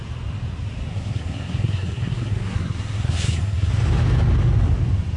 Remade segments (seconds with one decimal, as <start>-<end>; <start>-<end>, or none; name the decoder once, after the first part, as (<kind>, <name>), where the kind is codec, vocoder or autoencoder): 0.9-3.7 (codec, SNAC)